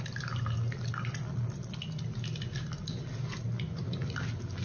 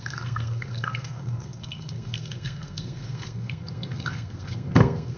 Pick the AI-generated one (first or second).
second